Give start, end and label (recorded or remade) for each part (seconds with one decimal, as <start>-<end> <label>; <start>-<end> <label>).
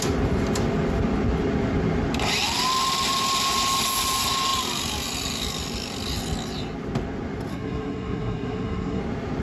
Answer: 0.0-7.5 recorded; 7.5-9.0 remade; 9.0-9.4 recorded